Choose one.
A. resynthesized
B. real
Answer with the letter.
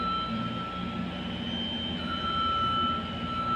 B